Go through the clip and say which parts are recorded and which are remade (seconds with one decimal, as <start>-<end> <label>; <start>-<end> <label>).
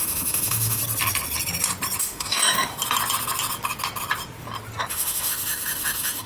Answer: 0.0-0.8 remade; 0.8-2.0 recorded; 2.0-2.7 remade; 2.7-4.9 recorded; 4.9-6.3 remade